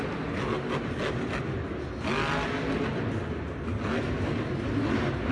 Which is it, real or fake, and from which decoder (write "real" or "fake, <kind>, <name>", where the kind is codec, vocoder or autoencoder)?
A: real